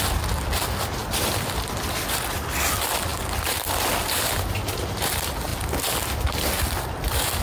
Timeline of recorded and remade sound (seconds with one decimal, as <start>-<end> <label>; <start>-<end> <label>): 0.0-7.4 recorded